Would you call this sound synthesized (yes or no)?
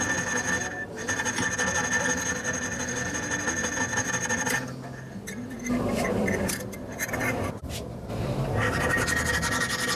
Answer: yes